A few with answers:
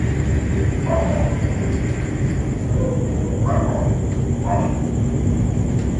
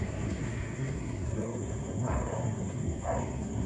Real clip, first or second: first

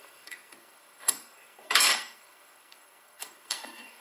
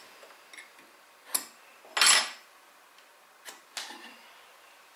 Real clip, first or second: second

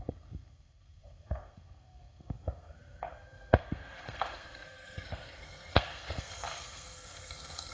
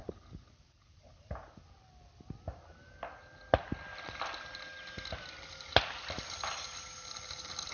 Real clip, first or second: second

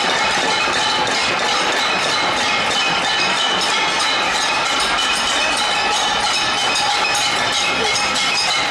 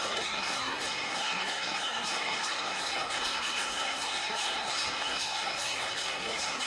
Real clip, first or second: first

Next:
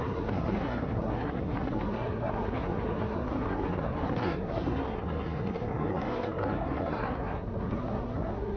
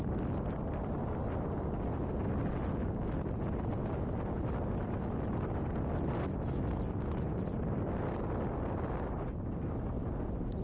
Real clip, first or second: second